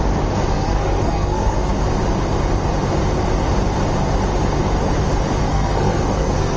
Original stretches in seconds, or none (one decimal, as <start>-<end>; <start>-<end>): 0.0-0.5; 1.7-5.5